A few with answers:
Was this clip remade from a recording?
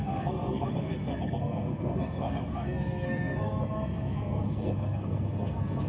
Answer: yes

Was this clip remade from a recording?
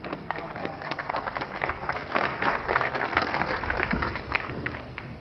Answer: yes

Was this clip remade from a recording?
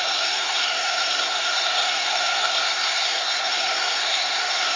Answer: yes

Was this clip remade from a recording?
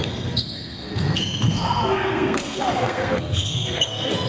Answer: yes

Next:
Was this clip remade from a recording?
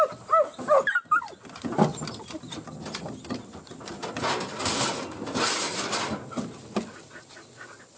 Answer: no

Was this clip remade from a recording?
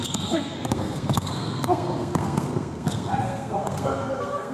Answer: yes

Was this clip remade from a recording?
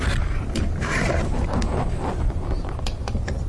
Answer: no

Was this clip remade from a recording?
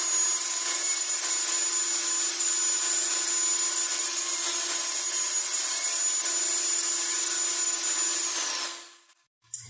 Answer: no